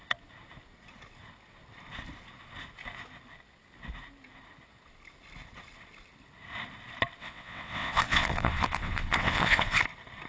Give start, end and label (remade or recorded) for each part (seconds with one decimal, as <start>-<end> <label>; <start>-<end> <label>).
0.0-7.2 recorded; 7.2-9.8 remade; 9.8-10.3 recorded